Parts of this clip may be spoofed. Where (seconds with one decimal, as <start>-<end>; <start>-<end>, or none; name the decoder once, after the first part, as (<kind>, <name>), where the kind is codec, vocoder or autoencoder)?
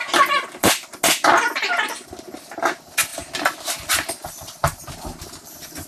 none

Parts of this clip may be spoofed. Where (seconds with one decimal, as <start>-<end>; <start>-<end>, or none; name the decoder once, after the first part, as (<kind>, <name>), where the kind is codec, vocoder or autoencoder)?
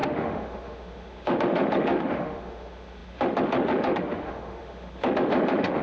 0.0-5.8 (autoencoder, DAC-VAE)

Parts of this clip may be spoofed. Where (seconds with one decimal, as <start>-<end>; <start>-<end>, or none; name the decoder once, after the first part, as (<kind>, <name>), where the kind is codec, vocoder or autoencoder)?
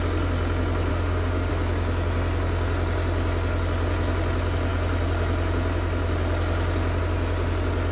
0.9-1.5 (autoencoder, DAC-VAE)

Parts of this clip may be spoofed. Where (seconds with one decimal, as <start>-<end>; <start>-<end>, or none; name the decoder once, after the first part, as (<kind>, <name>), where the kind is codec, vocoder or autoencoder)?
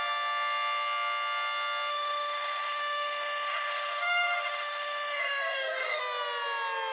1.9-6.0 (autoencoder, DAC-VAE)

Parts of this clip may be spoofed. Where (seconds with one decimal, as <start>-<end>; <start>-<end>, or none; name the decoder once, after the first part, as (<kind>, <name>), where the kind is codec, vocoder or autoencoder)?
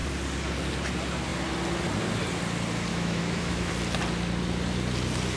2.9-3.7 (autoencoder, DAC-VAE)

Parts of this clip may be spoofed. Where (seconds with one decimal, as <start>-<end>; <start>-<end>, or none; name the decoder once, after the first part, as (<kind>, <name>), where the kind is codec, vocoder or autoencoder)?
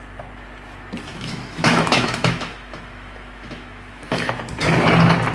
1.1-4.3 (autoencoder, DAC-VAE)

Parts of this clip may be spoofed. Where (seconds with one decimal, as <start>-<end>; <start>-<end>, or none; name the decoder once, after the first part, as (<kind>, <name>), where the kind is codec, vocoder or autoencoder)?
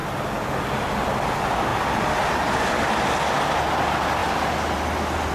none